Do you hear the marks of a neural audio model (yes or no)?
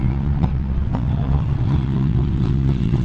yes